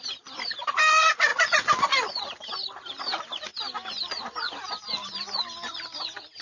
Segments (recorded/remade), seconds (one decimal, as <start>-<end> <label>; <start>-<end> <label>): 0.0-6.4 recorded